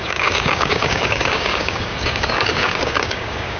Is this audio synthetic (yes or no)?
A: yes